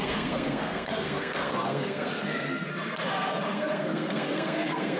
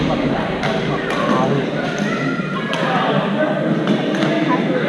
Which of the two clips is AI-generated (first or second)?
first